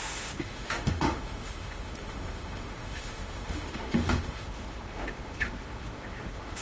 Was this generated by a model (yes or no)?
yes